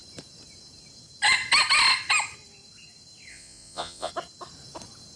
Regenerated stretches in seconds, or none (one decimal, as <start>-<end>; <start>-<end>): 3.3-4.1